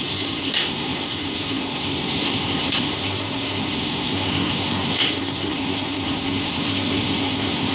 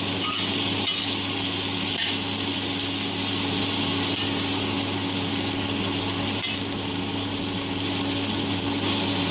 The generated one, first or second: first